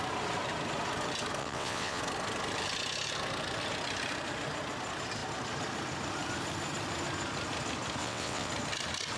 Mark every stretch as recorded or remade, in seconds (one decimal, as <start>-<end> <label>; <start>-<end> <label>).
0.0-1.4 recorded; 1.4-2.0 remade; 2.0-8.0 recorded; 8.0-8.5 remade; 8.5-9.2 recorded